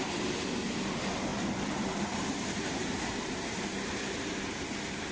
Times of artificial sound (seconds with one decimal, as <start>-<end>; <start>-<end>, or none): 1.3-4.4